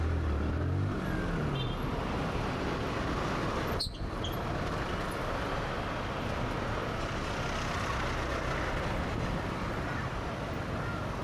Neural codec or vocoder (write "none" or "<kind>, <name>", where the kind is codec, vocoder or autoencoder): none